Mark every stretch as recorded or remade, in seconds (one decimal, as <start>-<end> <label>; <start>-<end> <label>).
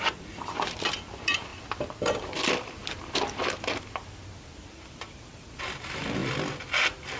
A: 0.0-7.2 remade